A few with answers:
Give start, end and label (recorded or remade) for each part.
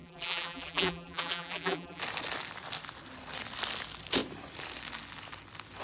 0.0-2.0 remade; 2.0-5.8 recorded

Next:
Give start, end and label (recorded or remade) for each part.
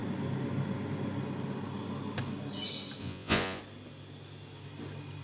0.0-3.0 recorded; 3.0-3.6 remade; 3.6-5.2 recorded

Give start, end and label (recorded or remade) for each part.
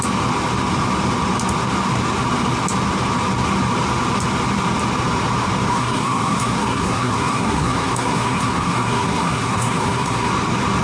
0.0-5.7 recorded; 5.7-10.3 remade; 10.3-10.8 recorded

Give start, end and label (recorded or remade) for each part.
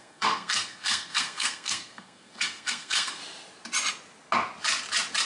0.0-3.2 remade; 3.2-5.3 recorded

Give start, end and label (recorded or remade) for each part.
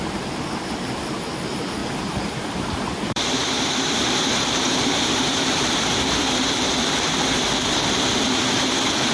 0.0-1.8 recorded; 1.8-7.0 remade; 7.0-9.1 recorded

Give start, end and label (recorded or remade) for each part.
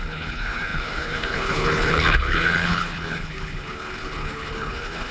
0.0-5.1 remade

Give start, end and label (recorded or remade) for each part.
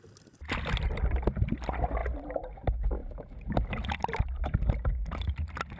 0.0-3.0 recorded; 3.0-3.9 remade; 3.9-5.8 recorded